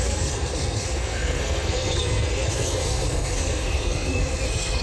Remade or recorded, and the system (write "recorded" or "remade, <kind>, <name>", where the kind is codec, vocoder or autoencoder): remade, codec, SNAC